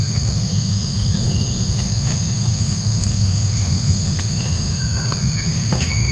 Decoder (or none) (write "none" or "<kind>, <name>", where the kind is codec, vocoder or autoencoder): autoencoder, DAC-VAE